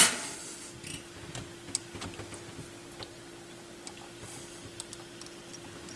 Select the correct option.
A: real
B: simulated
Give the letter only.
A